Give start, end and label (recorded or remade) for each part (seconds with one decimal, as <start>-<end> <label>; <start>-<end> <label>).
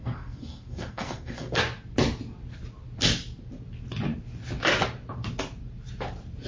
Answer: 0.0-1.6 remade; 1.6-6.5 recorded